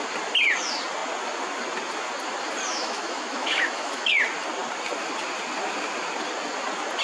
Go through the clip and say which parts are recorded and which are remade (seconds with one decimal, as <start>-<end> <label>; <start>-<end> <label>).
0.0-2.7 recorded; 2.7-4.1 remade; 4.1-7.0 recorded